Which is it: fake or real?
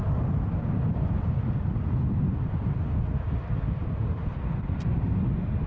real